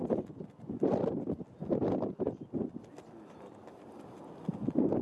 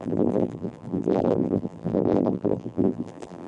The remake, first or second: second